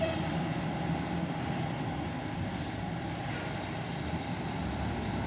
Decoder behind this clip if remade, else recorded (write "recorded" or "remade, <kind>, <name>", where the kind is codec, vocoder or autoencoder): recorded